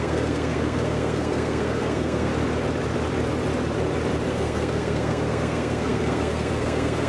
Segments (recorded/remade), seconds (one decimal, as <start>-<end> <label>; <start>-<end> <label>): 0.0-2.3 remade; 2.3-4.3 recorded; 4.3-7.1 remade